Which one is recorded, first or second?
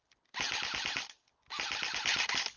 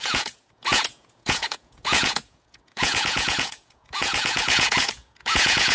first